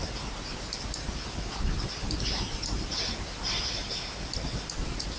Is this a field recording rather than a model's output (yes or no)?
yes